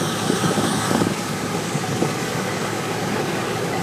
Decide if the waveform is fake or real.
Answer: fake